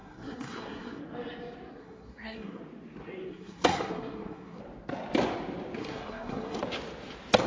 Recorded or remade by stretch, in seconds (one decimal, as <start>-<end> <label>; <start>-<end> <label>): 0.0-1.0 remade; 1.0-1.8 recorded; 1.8-2.6 remade; 2.6-3.3 recorded; 3.3-4.6 remade; 4.6-5.8 recorded; 5.8-6.6 remade; 6.6-7.5 recorded